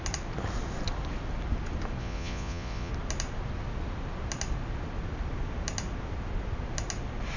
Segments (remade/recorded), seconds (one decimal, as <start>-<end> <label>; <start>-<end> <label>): 0.0-2.0 recorded; 2.0-2.9 remade; 2.9-7.4 recorded